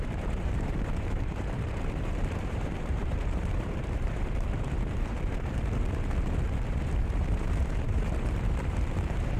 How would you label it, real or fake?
fake